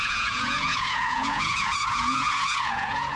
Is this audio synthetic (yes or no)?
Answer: yes